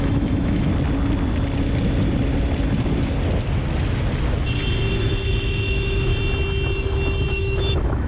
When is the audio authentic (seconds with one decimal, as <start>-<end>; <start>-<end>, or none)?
0.7-4.9; 6.1-7.3